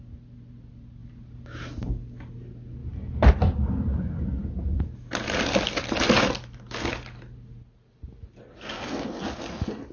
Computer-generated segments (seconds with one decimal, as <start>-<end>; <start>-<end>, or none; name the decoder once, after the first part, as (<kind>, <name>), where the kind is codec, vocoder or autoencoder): none